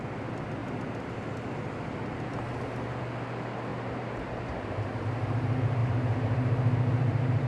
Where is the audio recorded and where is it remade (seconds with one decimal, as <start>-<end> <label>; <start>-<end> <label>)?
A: 0.0-3.7 recorded; 3.7-4.4 remade; 4.4-5.8 recorded; 5.8-7.5 remade